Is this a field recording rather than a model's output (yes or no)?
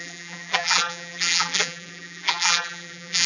no